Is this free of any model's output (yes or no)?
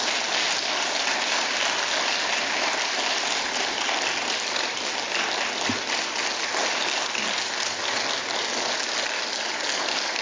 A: yes